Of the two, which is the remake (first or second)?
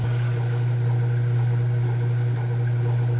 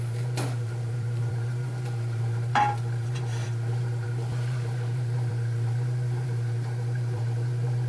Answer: second